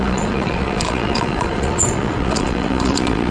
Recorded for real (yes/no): no